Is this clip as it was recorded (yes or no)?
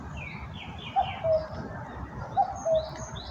yes